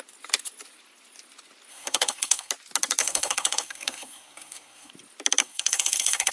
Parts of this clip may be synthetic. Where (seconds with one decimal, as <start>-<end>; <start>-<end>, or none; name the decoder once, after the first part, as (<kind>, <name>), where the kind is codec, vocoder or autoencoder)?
1.7-2.5 (codec, SNAC); 3.0-4.9; 5.4-6.3